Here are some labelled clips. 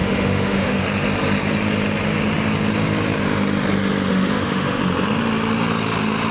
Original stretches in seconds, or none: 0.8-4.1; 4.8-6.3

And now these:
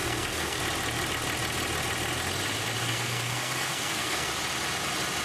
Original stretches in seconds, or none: 0.6-2.8; 4.3-5.2

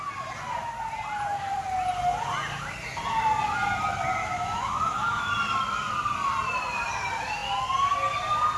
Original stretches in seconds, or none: 0.0-4.2; 5.3-8.6